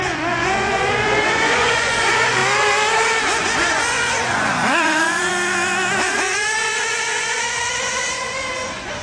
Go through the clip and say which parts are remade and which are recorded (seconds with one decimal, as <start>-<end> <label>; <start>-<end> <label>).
0.0-2.4 remade; 2.4-3.2 recorded; 3.2-5.3 remade; 5.3-5.9 recorded; 5.9-9.0 remade